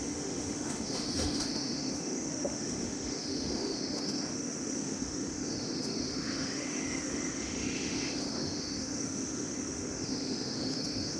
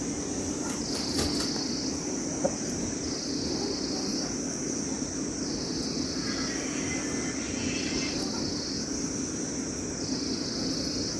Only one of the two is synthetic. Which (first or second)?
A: first